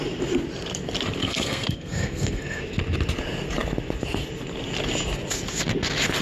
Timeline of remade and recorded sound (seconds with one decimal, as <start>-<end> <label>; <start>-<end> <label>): 0.0-1.2 recorded; 1.2-2.6 remade; 2.6-6.2 recorded